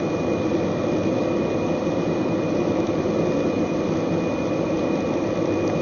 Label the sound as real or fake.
real